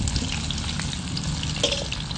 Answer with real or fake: real